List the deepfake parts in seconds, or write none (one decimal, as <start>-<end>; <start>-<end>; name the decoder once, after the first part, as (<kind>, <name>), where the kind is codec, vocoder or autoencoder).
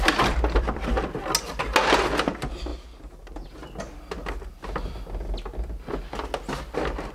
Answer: none